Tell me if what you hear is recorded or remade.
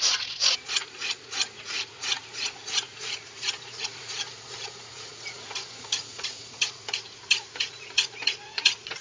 remade